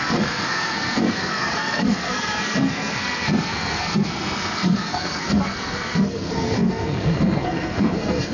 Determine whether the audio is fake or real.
fake